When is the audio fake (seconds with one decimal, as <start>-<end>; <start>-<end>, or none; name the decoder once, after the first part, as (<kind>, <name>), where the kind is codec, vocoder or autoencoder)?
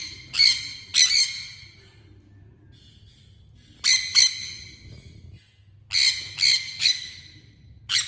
none